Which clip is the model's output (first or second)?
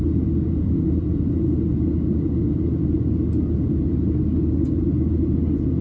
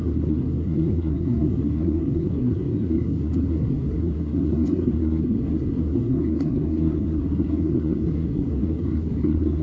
second